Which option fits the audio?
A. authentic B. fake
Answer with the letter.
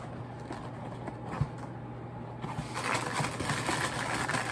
A